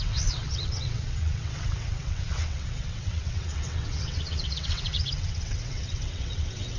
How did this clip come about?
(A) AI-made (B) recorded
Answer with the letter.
A